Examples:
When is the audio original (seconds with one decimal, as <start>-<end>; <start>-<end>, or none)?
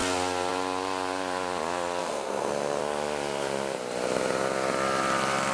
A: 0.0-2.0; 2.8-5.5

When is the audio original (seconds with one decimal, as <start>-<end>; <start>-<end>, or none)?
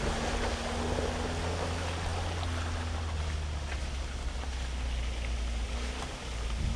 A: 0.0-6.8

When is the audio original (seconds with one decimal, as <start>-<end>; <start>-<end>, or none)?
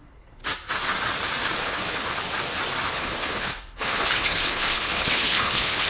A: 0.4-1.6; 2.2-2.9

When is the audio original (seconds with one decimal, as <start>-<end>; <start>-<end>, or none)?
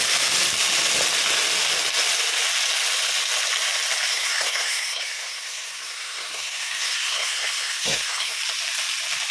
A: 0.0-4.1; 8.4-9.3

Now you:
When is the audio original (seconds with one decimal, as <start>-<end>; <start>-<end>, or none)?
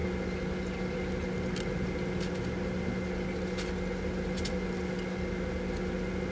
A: 0.0-6.3